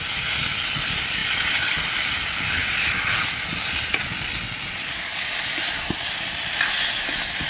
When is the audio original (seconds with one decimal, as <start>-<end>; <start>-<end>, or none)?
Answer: 0.0-7.5